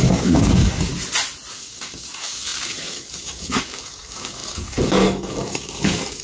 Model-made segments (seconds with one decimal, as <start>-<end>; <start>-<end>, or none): 0.0-0.9; 1.5-6.2